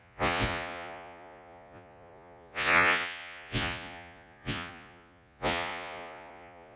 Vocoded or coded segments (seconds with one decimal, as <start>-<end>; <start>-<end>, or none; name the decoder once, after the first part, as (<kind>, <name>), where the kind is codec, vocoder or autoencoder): 0.0-6.8 (vocoder, Vocos)